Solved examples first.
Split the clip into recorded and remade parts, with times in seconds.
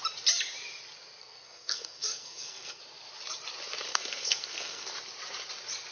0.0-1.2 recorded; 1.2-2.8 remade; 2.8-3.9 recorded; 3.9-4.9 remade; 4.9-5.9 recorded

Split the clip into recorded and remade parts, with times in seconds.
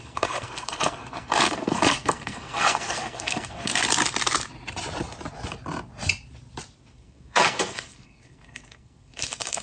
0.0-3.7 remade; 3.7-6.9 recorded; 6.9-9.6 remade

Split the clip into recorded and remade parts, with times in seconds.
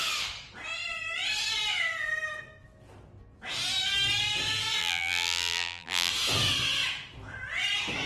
0.0-4.8 recorded; 4.8-6.1 remade; 6.1-8.1 recorded